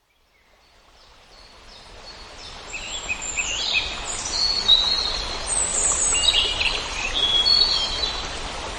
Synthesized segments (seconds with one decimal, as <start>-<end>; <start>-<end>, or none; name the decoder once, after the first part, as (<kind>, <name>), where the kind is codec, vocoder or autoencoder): 5.7-7.1 (vocoder, BigVGAN v2)